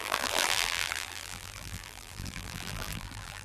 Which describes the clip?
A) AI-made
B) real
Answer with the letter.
A